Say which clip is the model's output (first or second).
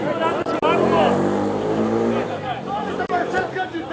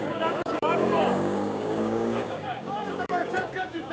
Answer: second